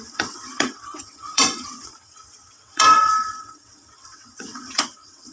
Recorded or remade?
remade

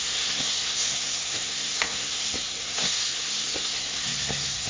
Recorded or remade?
remade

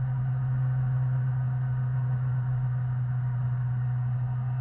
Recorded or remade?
recorded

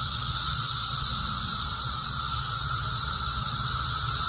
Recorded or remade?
remade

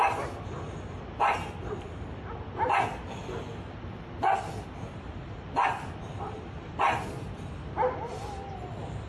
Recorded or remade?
recorded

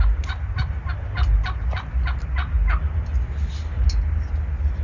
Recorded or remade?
recorded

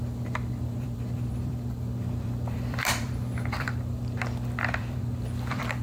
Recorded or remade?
remade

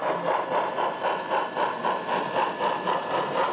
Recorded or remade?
recorded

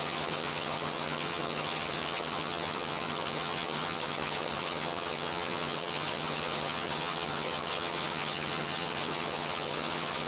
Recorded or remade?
remade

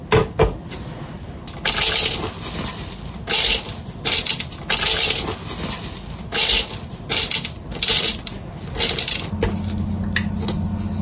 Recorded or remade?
recorded